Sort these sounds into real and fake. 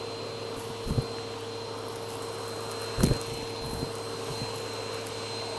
real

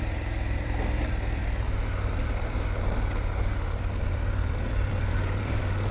fake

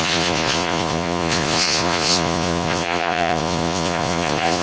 fake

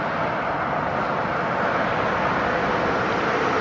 real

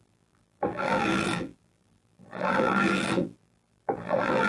fake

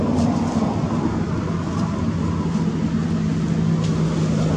real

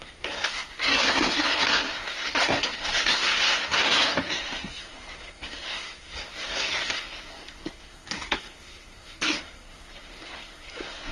fake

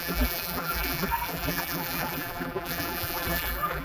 fake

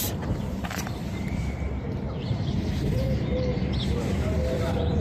fake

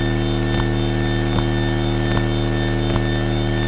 real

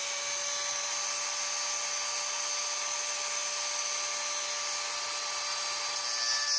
real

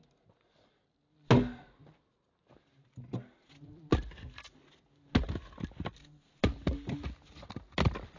real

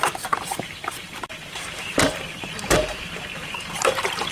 fake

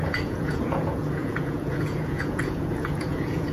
fake